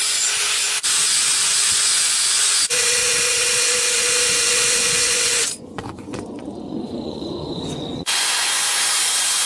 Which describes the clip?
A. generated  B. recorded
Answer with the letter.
A